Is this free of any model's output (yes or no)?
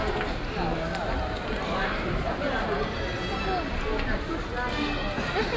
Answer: yes